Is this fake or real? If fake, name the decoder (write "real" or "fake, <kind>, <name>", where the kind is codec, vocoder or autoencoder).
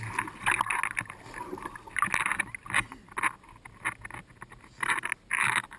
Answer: real